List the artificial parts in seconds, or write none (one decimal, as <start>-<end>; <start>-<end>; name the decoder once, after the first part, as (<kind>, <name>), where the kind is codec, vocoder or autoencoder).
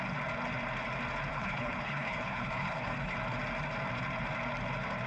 1.3-3.2 (codec, HILCodec)